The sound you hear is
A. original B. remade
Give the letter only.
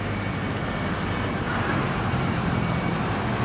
A